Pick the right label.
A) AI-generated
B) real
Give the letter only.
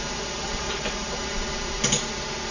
B